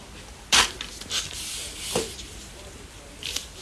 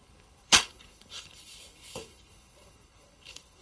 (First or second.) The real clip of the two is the first